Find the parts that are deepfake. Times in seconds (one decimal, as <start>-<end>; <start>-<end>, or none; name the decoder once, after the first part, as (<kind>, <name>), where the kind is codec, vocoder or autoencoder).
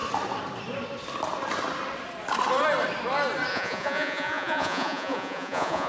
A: 3.5-5.9 (vocoder, Vocos)